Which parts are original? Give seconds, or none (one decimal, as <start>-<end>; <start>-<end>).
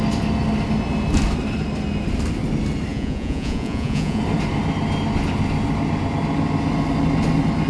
0.0-2.9; 4.2-7.7